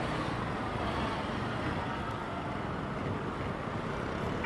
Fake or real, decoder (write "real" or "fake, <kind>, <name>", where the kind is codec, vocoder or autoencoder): real